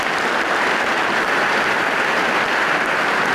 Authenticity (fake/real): real